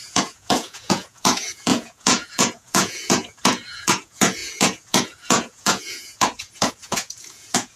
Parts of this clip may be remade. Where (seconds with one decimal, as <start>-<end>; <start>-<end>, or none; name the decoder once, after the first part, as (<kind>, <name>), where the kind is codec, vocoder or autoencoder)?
0.0-7.8 (vocoder, Vocos)

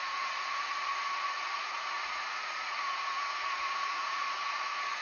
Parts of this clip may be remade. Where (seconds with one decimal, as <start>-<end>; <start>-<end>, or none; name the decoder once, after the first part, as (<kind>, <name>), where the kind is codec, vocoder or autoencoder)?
0.0-5.0 (vocoder, Vocos)

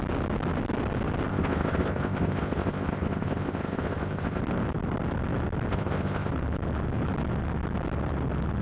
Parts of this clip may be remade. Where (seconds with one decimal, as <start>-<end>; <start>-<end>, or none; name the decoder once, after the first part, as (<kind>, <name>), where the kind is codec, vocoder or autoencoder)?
1.3-4.4 (codec, ZipCodec); 5.7-6.3